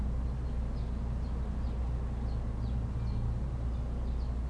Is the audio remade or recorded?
recorded